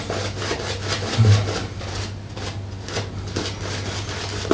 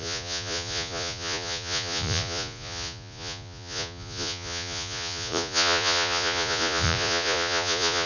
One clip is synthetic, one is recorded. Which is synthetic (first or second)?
second